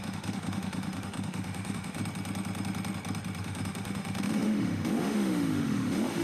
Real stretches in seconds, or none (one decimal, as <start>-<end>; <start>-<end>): 2.0-3.4